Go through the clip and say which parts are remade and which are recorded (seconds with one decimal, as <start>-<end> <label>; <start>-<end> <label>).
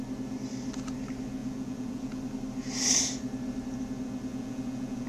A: 0.0-1.4 recorded; 1.4-2.2 remade; 2.2-4.3 recorded; 4.3-5.1 remade